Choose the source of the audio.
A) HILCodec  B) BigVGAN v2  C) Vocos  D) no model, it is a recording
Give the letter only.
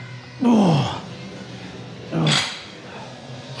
D